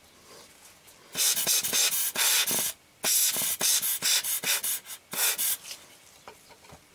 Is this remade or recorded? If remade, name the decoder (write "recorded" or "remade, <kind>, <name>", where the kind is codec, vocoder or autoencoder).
recorded